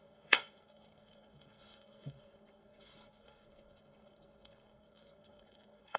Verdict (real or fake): fake